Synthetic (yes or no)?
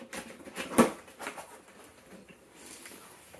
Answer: yes